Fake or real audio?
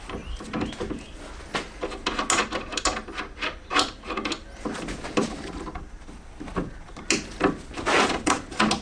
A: real